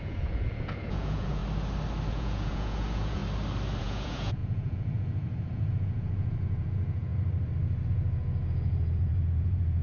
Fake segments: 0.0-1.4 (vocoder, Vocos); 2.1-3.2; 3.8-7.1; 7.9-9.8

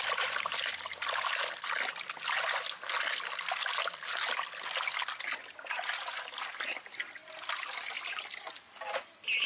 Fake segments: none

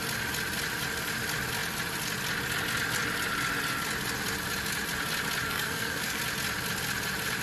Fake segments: 5.4-6.2 (codec, SNAC)